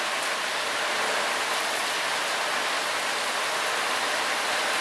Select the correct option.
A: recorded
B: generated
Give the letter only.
A